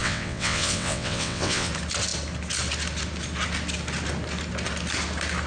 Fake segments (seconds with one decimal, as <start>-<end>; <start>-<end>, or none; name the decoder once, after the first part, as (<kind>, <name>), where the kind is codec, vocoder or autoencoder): 0.0-1.7 (vocoder, WaveNeXt)